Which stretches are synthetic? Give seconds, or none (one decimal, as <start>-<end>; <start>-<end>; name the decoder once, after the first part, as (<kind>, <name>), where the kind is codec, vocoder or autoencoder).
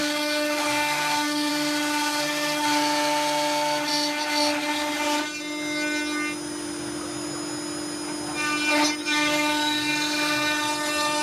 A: 0.0-1.5 (codec, DAC); 9.0-9.9